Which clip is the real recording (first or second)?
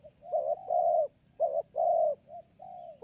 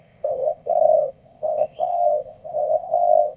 first